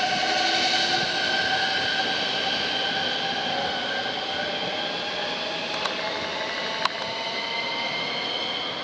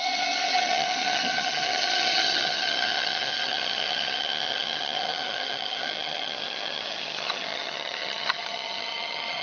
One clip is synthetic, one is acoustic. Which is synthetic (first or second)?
second